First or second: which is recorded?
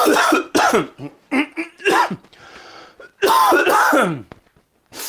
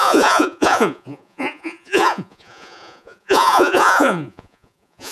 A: first